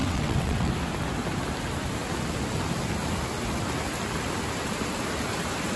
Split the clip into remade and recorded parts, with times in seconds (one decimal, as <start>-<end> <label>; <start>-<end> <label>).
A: 0.0-0.7 remade; 0.7-5.8 recorded